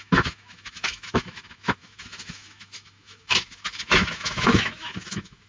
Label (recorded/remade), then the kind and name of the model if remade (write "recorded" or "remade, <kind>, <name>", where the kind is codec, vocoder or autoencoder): remade, autoencoder, DAC-VAE